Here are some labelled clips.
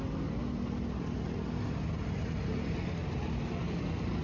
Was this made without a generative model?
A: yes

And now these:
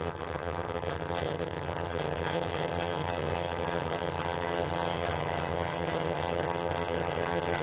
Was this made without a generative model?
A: no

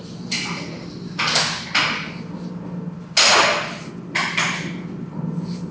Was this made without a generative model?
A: yes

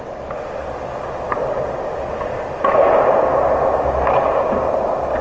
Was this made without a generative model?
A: yes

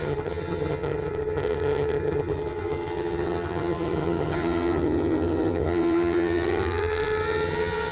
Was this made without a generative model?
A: no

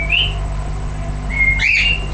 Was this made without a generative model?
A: yes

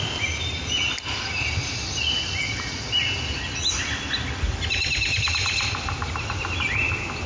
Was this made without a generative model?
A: yes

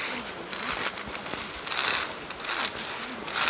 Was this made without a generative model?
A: yes